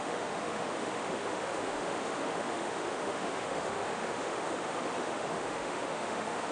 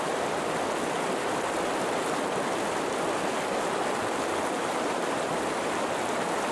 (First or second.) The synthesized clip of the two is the first